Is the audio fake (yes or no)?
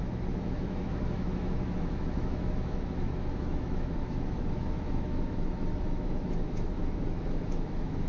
yes